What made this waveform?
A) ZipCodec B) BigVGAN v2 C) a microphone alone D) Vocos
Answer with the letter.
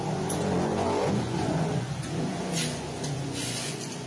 D